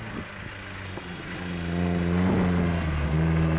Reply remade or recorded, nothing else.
recorded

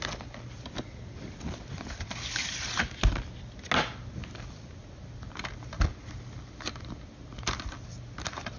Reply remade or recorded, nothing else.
recorded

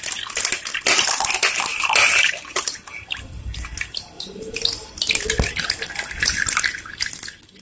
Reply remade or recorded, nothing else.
recorded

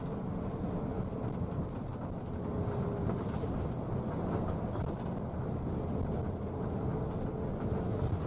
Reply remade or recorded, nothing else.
recorded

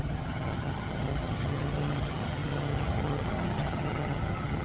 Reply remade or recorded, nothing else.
remade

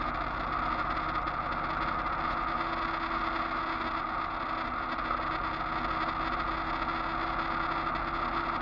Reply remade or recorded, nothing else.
recorded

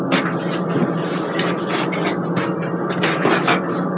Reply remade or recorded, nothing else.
recorded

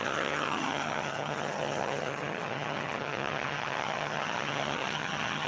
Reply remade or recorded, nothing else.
remade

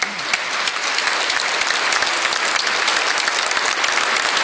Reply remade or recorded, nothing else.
recorded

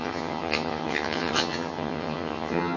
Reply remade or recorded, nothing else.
remade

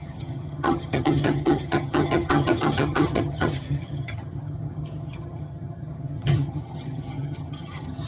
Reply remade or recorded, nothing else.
remade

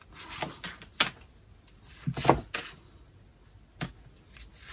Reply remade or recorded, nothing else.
recorded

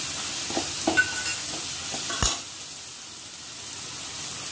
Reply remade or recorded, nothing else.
recorded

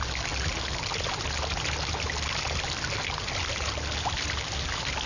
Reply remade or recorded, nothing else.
recorded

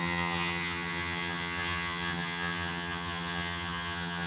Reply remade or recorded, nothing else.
remade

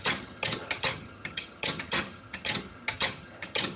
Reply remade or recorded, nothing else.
remade